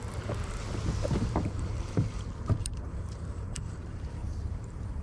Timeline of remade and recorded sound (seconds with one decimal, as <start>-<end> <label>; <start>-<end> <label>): 0.0-1.2 recorded; 1.2-5.0 remade